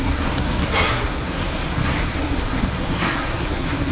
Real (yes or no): no